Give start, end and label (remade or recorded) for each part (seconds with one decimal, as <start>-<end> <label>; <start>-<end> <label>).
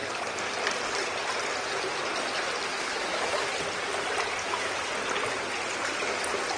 0.0-2.7 recorded; 2.7-3.5 remade; 3.5-4.4 recorded; 4.4-4.9 remade; 4.9-6.6 recorded